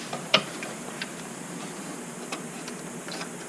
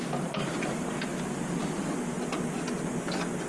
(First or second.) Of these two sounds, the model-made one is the first